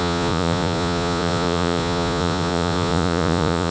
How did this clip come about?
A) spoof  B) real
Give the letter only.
A